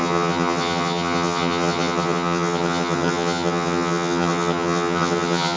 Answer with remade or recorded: remade